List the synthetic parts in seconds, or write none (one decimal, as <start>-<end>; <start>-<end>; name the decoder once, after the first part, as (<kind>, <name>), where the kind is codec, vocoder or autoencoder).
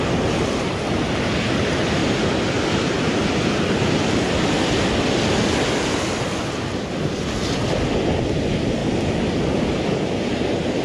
none